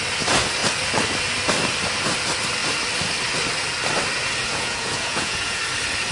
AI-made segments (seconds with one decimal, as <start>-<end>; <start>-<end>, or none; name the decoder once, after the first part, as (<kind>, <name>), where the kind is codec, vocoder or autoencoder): 4.4-5.6 (vocoder, Vocos)